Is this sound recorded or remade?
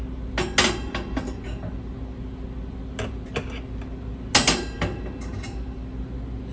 recorded